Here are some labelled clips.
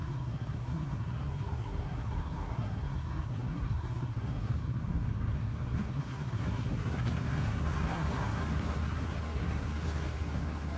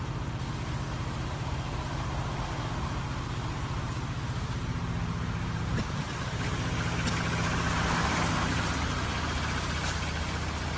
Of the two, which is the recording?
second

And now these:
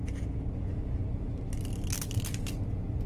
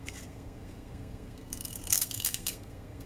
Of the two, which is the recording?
first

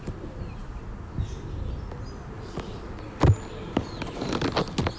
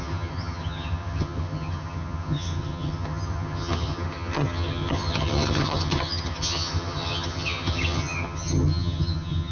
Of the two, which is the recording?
first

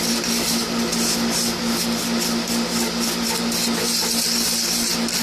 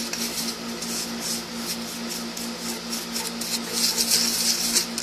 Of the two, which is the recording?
second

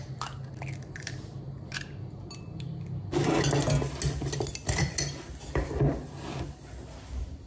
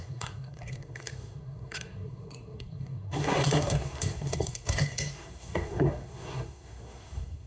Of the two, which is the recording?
first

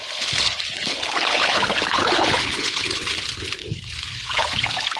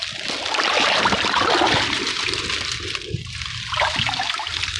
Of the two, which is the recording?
second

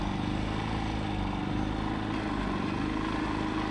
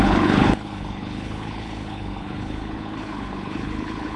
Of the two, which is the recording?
first